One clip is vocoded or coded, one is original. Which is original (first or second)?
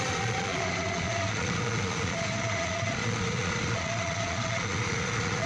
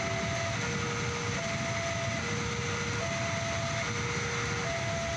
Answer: second